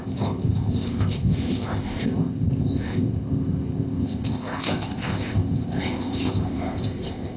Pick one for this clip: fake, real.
fake